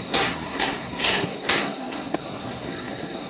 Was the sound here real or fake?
fake